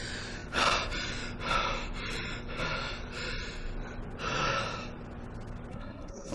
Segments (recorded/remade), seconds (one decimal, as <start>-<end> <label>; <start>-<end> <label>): 0.0-5.7 recorded; 5.7-6.3 remade